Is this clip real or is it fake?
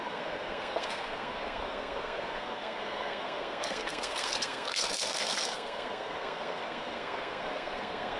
fake